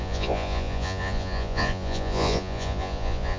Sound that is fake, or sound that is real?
fake